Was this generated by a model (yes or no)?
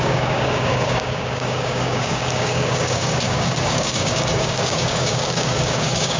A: yes